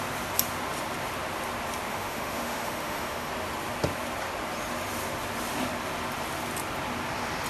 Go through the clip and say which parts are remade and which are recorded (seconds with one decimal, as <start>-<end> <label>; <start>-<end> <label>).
0.0-1.9 recorded; 1.9-3.3 remade; 3.3-7.5 recorded